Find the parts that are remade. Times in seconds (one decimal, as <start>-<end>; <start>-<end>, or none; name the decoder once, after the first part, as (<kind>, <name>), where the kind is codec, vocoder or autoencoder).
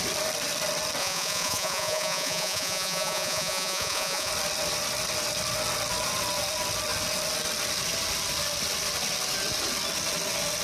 1.0-4.3 (vocoder, Vocos)